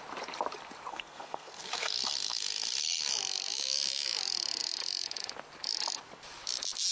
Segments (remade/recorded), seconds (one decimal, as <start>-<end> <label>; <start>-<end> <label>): 0.0-0.9 recorded; 0.9-3.1 remade; 3.1-6.9 recorded